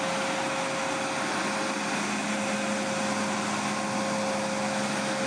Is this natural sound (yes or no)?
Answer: yes